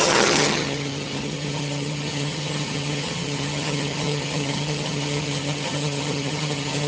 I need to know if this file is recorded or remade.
remade